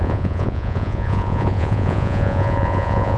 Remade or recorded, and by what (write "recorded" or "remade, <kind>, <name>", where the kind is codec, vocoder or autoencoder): remade, vocoder, Vocos